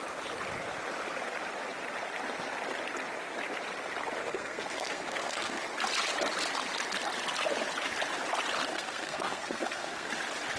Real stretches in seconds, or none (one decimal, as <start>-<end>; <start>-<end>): 0.0-4.2; 5.6-8.7; 10.1-10.6